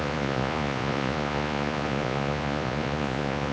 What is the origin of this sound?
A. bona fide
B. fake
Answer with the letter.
B